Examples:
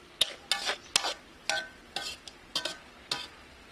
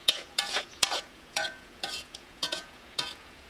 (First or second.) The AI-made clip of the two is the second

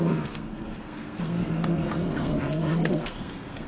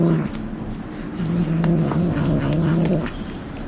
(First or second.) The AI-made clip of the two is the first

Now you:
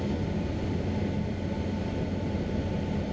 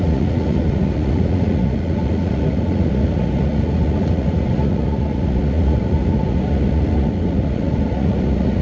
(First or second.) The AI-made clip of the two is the second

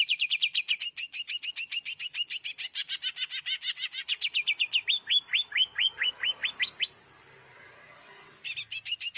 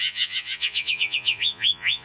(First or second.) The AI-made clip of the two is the second